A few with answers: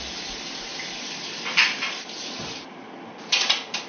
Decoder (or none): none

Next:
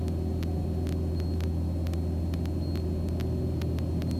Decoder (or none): none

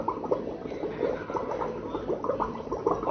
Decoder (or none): none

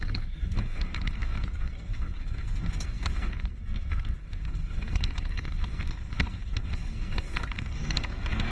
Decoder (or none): codec, SNAC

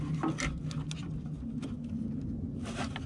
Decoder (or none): none